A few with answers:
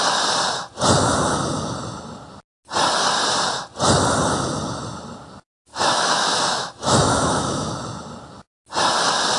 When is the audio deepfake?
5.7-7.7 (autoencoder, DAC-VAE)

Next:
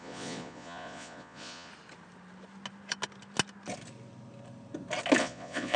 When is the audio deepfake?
0.0-1.7 (vocoder, Vocos); 5.2-5.8

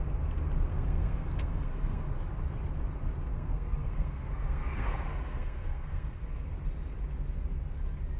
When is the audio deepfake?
0.7-2.1 (codec, SNAC); 3.3-6.5

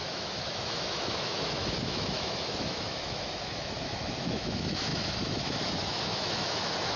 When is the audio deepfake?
0.0-7.0 (autoencoder, DAC-VAE)

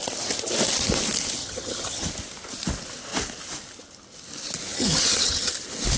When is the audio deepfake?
1.4-2.1 (vocoder, HiFi-GAN); 4.7-5.5

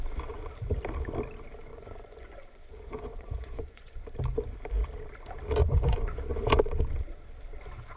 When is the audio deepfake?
1.7-4.0 (vocoder, Vocos); 5.6-6.2

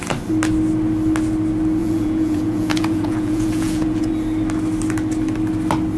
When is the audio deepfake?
1.8-4.1 (vocoder, Vocos)